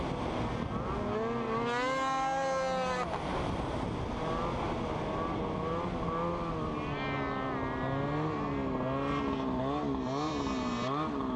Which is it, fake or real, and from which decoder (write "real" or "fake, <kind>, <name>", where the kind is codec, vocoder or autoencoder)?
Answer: real